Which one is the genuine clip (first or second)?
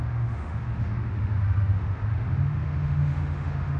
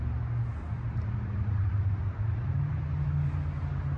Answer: second